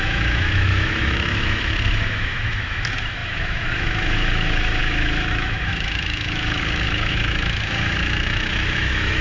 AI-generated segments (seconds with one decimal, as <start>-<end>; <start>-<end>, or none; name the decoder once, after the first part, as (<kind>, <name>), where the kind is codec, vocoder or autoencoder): 0.0-9.2 (autoencoder, DAC-VAE)